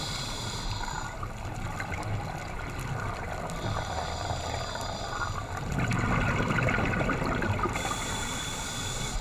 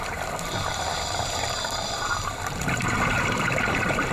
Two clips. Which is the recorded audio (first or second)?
first